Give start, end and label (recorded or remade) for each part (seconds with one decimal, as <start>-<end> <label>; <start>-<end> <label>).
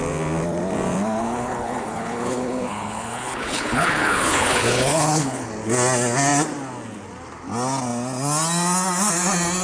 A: 0.0-1.2 recorded; 1.2-5.5 remade; 5.5-9.6 recorded